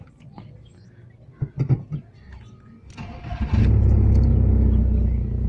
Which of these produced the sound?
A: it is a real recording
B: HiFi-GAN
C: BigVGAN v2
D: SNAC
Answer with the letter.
A